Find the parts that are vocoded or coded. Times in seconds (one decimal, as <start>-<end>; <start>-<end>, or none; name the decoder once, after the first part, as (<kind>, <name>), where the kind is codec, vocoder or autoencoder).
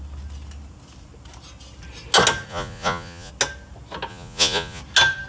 2.5-3.3 (vocoder, Vocos); 4.1-4.8